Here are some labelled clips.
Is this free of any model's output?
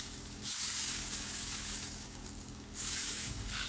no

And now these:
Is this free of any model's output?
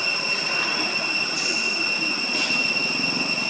yes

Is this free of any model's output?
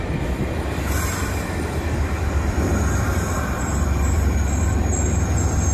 no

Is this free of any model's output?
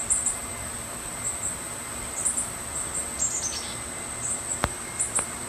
yes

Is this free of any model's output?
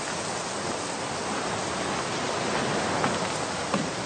yes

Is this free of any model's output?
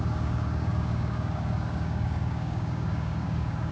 no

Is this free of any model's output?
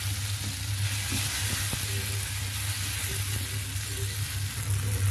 yes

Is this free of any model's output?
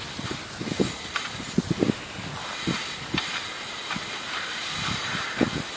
yes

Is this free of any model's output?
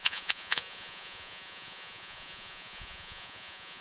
no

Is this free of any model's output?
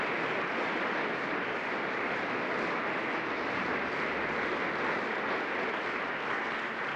yes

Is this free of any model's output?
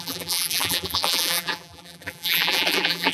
no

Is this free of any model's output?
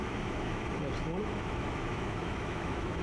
no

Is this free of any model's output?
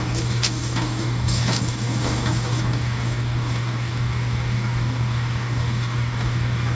no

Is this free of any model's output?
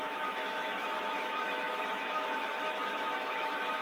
no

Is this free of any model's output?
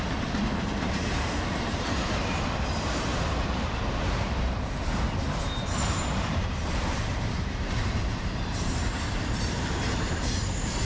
no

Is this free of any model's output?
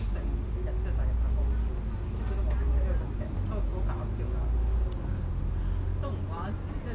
yes